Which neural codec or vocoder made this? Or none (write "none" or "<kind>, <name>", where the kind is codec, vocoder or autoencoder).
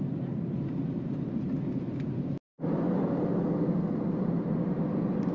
none